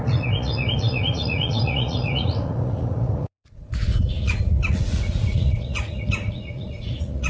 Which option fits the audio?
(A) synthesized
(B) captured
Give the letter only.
A